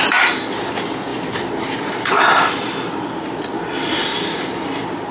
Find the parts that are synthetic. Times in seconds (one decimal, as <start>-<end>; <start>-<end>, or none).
none